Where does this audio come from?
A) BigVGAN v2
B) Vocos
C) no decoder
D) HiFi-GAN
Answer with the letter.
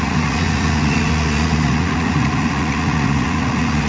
B